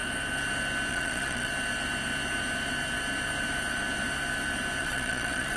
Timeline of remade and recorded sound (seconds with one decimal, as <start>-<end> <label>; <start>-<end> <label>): 0.0-0.9 recorded; 0.9-1.5 remade; 1.5-4.8 recorded; 4.8-5.6 remade